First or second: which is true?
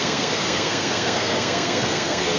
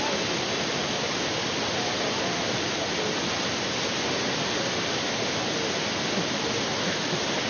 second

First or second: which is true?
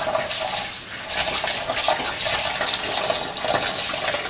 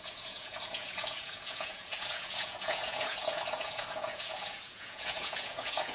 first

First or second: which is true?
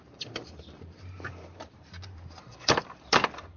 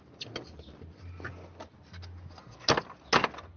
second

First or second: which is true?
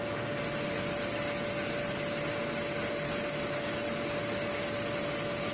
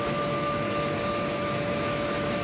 first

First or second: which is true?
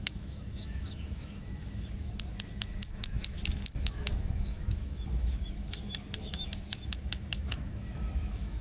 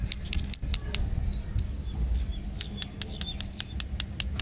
second